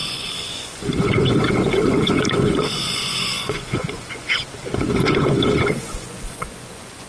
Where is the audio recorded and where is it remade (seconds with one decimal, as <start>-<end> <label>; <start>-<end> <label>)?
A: 0.0-4.3 remade; 4.3-4.7 recorded; 4.7-7.1 remade